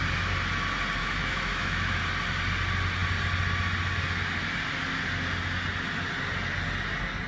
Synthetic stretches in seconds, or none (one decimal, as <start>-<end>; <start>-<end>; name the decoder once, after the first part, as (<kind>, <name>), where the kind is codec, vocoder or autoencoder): 1.0-2.0 (autoencoder, DAC-VAE)